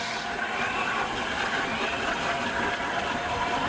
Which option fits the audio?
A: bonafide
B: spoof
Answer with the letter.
A